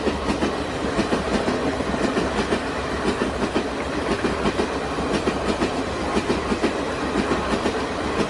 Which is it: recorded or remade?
recorded